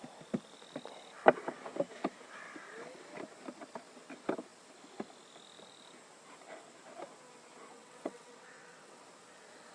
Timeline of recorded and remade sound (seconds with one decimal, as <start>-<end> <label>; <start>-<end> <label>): 0.0-7.7 recorded; 7.7-9.0 remade; 9.0-9.7 recorded